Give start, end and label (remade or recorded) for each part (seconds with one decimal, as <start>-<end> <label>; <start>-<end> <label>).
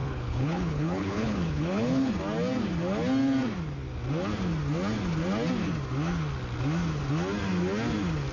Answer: 0.0-2.1 remade; 2.1-8.3 recorded